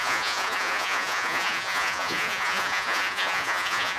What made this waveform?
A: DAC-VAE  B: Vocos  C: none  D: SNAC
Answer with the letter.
B